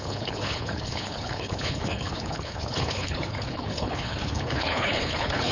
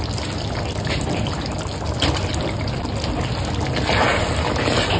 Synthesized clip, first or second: first